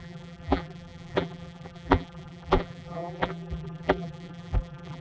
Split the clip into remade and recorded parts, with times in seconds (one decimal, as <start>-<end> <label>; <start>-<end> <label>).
0.0-5.0 remade